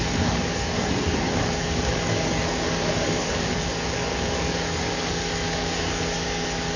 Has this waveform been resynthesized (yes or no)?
yes